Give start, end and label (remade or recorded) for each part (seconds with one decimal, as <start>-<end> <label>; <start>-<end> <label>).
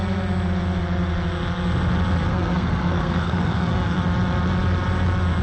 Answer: 0.0-2.3 recorded; 2.3-4.0 remade; 4.0-5.4 recorded